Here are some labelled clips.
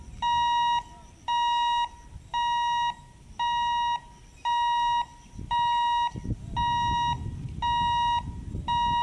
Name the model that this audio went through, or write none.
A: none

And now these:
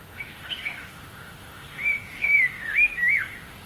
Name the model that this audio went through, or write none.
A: autoencoder, DAC-VAE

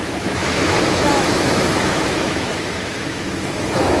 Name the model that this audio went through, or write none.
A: autoencoder, DAC-VAE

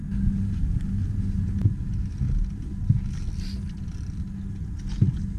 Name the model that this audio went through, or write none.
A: none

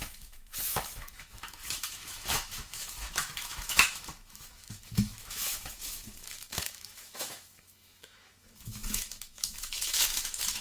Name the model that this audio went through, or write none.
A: autoencoder, DAC-VAE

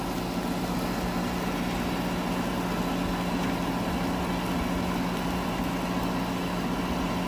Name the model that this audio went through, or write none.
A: none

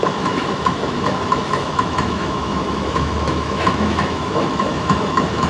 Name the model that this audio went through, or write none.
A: autoencoder, DAC-VAE